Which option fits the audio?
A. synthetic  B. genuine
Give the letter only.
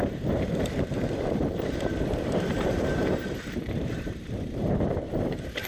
A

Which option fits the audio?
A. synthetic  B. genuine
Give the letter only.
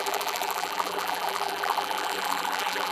A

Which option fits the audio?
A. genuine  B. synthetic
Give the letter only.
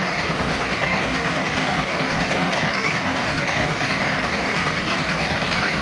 B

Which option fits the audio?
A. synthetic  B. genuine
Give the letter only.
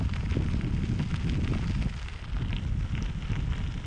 B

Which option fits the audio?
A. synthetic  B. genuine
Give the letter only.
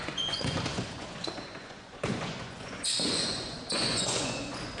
A